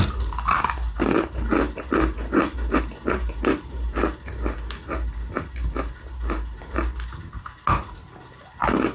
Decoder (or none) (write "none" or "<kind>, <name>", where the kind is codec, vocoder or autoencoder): none